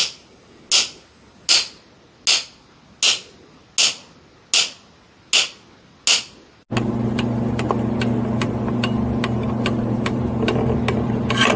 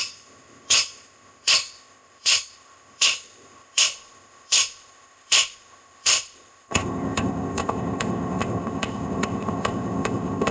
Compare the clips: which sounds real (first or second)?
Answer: first